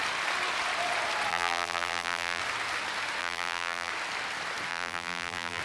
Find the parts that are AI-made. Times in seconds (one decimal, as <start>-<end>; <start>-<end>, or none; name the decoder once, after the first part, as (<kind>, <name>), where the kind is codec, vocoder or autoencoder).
1.3-2.4 (vocoder, BigVGAN v2); 3.2-3.9; 4.7-5.6